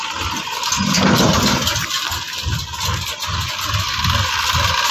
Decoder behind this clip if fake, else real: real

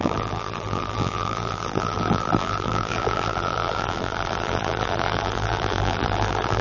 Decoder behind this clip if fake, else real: fake, vocoder, BigVGAN v2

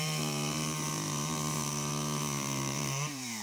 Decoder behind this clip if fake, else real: fake, vocoder, BigVGAN v2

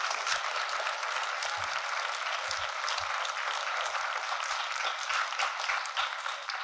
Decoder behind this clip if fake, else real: real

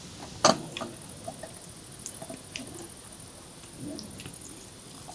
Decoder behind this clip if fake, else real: real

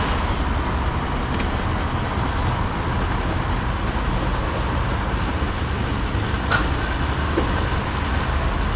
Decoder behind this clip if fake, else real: real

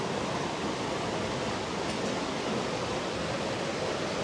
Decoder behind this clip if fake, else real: real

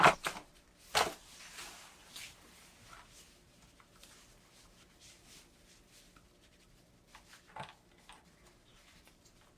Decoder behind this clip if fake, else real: real